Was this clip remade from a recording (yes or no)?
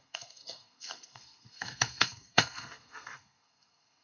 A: yes